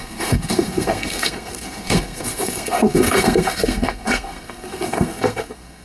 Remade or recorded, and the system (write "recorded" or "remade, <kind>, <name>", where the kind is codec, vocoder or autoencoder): remade, codec, SNAC